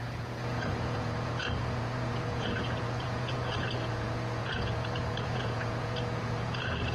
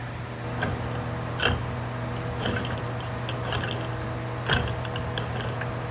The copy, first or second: first